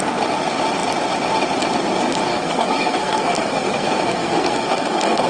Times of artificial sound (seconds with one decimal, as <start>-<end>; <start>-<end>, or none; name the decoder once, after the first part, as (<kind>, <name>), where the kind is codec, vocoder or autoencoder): 2.3-5.3 (codec, SNAC)